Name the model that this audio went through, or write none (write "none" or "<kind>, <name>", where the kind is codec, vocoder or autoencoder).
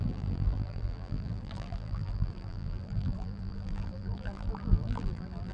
vocoder, BigVGAN v2